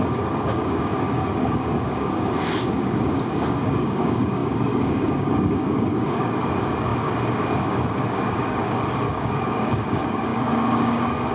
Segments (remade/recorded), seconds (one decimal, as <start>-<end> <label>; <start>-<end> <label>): 0.0-11.3 remade